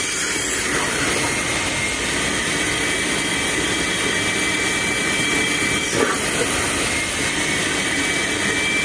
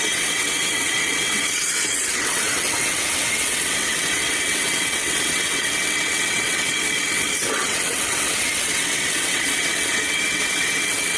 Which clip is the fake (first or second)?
second